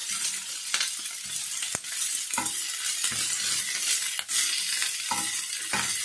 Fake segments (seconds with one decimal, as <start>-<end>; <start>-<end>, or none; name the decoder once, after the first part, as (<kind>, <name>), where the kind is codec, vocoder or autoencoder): none